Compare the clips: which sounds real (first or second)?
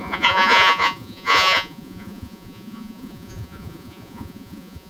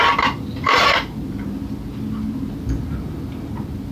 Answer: second